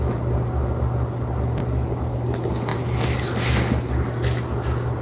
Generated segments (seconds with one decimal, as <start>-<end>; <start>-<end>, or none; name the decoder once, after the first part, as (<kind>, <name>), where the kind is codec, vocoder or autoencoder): none